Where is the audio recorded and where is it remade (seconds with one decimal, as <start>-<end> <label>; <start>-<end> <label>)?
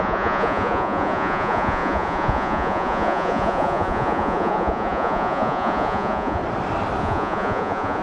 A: 0.0-6.4 remade; 6.4-7.0 recorded; 7.0-8.0 remade